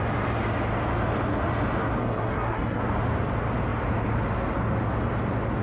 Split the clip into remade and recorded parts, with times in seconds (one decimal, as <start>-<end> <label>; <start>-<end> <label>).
0.0-2.0 recorded; 2.0-2.8 remade; 2.8-5.6 recorded